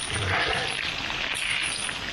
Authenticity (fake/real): real